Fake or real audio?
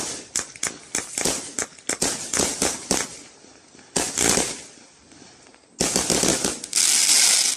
real